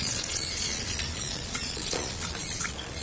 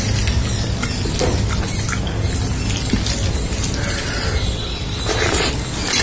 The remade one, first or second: first